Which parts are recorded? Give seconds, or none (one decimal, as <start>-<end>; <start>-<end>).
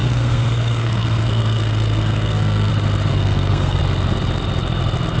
2.7-3.1; 3.8-5.2